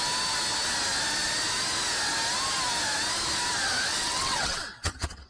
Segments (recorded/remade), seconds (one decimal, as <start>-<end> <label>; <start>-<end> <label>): 0.0-3.9 recorded; 3.9-5.3 remade